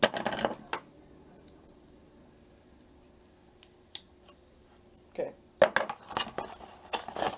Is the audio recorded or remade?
recorded